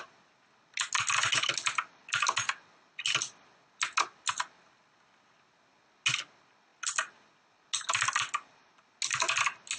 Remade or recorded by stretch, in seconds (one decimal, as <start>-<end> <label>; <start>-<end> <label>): 0.0-9.8 recorded